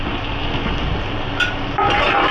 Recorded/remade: recorded